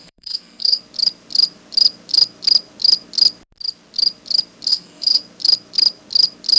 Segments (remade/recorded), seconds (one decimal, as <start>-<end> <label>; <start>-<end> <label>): 0.0-0.8 remade; 0.8-4.7 recorded; 4.7-5.2 remade; 5.2-6.6 recorded